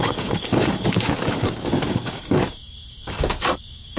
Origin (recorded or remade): remade